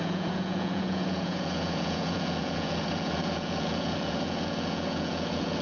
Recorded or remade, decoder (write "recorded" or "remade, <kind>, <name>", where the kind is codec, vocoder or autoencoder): remade, vocoder, Vocos